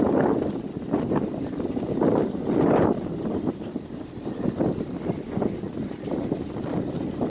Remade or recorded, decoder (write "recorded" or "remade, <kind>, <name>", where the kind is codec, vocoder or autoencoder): recorded